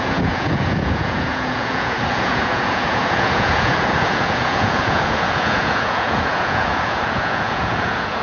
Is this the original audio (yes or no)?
no